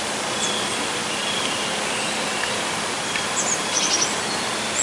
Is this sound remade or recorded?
recorded